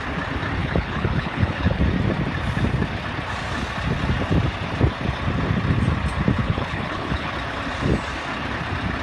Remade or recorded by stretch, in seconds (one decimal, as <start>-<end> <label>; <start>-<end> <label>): 0.0-0.6 recorded; 0.6-1.8 remade; 1.8-6.4 recorded; 6.4-7.3 remade; 7.3-9.0 recorded

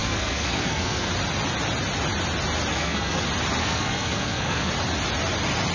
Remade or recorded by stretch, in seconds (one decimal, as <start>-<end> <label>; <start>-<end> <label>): 0.0-1.1 remade; 1.1-2.7 recorded; 2.7-3.2 remade; 3.2-3.6 recorded; 3.6-4.7 remade; 4.7-5.7 recorded

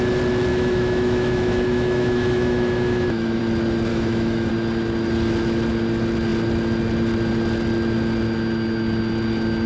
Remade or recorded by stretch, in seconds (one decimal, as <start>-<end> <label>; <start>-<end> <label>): 0.0-0.5 recorded; 0.5-3.4 remade; 3.4-3.9 recorded; 3.9-4.5 remade; 4.5-9.7 recorded

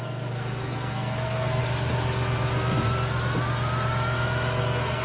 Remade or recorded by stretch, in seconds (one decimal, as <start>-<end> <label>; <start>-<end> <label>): 0.0-1.6 remade; 1.6-4.6 recorded; 4.6-5.0 remade

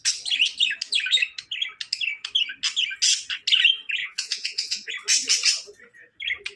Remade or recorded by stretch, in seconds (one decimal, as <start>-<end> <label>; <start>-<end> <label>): 0.0-4.0 recorded; 4.0-4.9 remade; 4.9-6.6 recorded

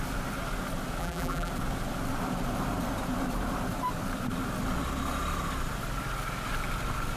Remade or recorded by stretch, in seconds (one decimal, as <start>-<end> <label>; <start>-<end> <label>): 0.0-1.0 recorded; 1.0-1.5 remade; 1.5-7.2 recorded

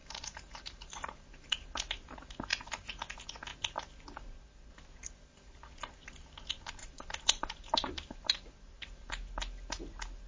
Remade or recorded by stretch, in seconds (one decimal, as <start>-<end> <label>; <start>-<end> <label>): 0.0-1.5 remade; 1.5-6.8 recorded; 6.8-9.1 remade; 9.1-10.3 recorded